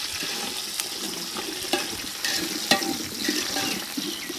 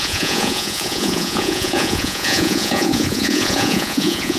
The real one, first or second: first